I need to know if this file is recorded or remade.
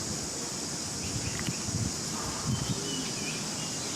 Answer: recorded